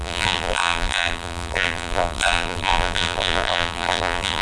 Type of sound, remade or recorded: remade